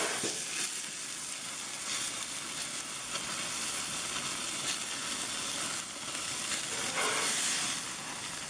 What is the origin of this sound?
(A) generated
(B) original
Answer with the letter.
B